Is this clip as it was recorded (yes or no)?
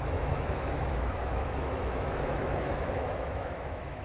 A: no